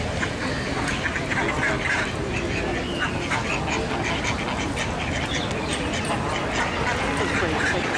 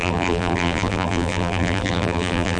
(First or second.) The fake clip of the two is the second